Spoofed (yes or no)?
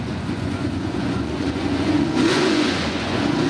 yes